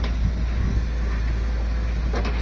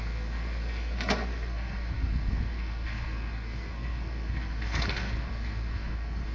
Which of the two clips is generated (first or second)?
second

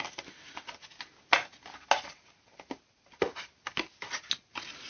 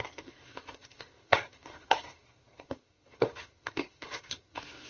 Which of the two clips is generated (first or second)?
second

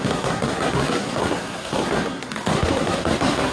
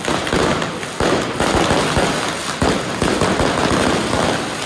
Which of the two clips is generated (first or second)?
first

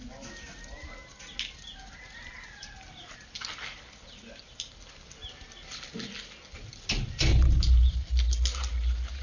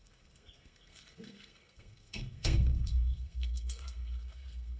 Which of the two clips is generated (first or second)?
second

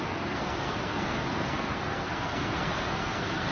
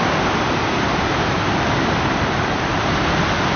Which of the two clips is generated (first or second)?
first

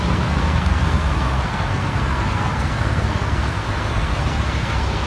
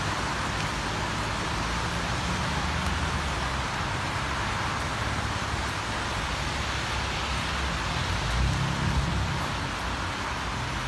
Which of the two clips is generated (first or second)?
first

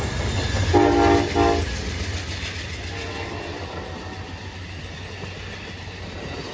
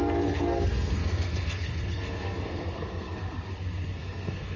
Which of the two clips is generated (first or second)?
second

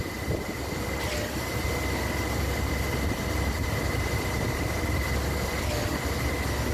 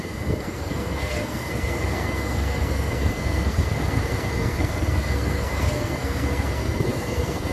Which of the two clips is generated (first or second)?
second